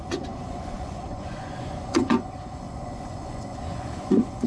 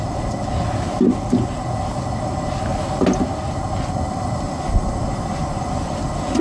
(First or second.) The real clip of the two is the second